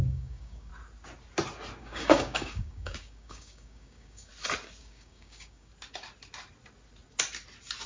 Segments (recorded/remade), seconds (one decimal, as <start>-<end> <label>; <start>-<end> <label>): 0.0-0.7 remade; 0.7-1.8 recorded; 1.8-4.3 remade; 4.3-4.8 recorded; 4.8-5.7 remade; 5.7-7.9 recorded